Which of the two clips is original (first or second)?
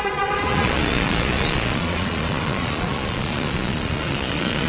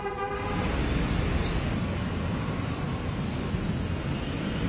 second